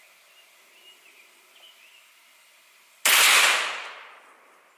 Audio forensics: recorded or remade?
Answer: recorded